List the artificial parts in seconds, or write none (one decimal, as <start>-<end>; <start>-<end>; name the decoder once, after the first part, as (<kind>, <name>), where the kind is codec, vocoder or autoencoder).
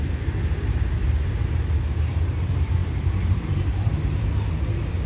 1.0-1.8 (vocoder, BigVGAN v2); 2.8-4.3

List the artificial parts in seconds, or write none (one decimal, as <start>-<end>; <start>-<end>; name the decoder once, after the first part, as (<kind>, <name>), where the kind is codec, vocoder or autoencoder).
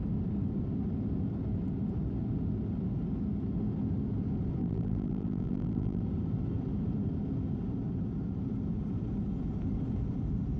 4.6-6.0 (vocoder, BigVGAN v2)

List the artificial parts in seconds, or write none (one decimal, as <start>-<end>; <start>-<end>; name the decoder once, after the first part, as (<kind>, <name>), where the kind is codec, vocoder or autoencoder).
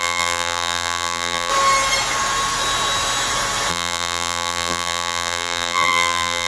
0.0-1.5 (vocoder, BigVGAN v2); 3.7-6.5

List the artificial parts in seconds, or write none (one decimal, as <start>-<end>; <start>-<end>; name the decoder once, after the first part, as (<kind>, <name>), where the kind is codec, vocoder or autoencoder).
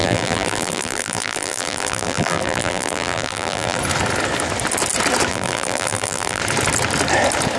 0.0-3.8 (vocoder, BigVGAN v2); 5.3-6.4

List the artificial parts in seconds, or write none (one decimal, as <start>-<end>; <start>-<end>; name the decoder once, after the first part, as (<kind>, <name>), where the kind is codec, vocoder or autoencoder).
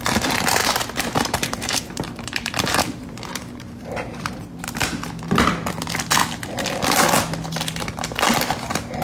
0.6-4.6 (vocoder, BigVGAN v2)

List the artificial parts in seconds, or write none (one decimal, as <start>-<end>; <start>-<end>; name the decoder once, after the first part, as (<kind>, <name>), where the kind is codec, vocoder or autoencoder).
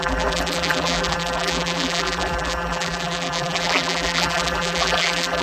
0.0-5.4 (vocoder, BigVGAN v2)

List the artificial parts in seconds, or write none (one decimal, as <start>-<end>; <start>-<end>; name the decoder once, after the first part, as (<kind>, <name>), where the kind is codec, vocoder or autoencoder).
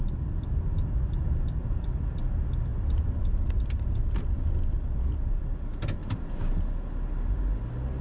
1.6-2.1 (vocoder, BigVGAN v2); 6.0-6.5